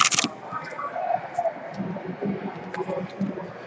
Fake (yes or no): no